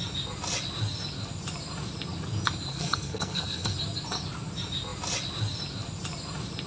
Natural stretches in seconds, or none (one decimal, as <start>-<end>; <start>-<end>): 0.0-2.7; 3.7-6.7